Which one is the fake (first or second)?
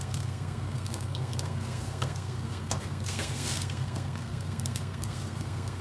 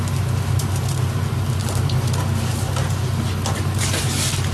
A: first